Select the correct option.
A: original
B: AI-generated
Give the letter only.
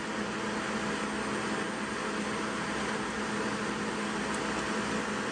A